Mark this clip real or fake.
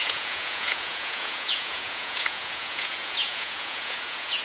fake